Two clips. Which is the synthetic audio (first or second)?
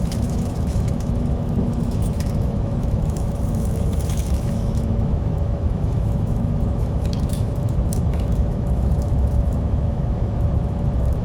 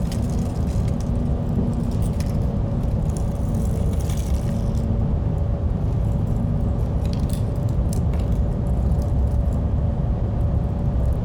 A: first